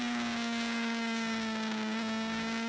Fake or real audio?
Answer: fake